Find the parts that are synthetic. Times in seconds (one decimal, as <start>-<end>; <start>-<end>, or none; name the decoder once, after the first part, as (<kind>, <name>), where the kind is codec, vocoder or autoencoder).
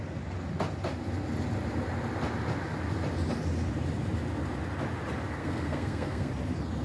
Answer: 5.4-6.3 (codec, SNAC)